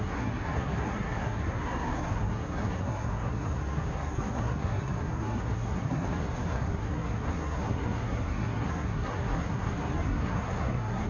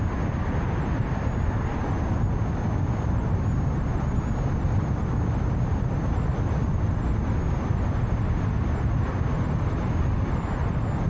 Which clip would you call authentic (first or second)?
second